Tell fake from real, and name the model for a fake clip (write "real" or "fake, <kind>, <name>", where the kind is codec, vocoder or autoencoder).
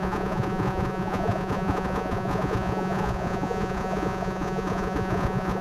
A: fake, vocoder, Vocos